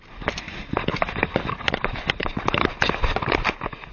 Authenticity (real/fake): real